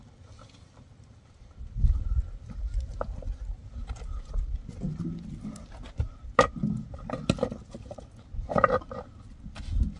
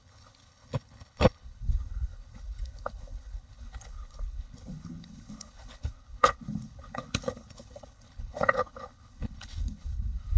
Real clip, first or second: first